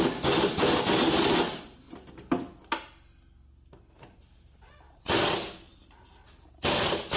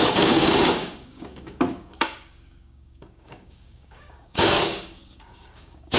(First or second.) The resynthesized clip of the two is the second